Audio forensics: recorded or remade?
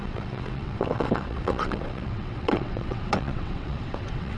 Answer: remade